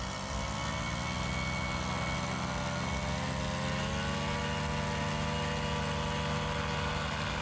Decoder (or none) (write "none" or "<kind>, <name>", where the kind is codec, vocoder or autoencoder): none